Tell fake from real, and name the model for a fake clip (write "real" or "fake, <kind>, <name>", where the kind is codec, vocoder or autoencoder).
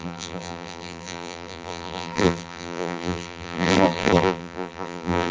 fake, vocoder, BigVGAN v2